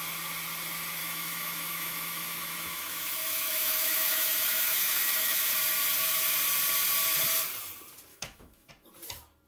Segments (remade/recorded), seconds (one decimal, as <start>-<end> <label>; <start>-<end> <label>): 0.0-1.0 recorded; 1.0-5.5 remade; 5.5-8.1 recorded; 8.1-8.7 remade; 8.7-9.5 recorded